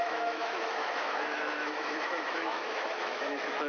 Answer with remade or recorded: remade